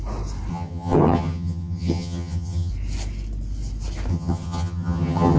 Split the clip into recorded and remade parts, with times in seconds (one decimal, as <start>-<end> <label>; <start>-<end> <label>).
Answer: 0.0-0.5 recorded; 0.5-2.7 remade; 2.7-4.1 recorded; 4.1-5.4 remade